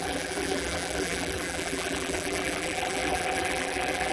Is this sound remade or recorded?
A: remade